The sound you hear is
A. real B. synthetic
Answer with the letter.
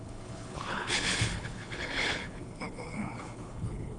B